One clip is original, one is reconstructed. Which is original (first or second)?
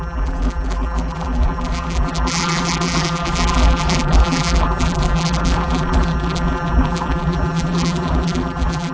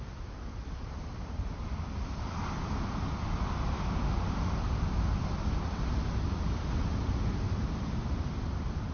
second